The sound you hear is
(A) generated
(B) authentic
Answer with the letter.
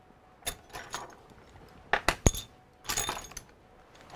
B